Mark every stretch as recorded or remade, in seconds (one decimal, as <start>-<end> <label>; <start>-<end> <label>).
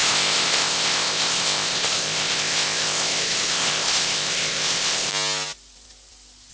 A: 0.0-5.1 remade; 5.1-6.5 recorded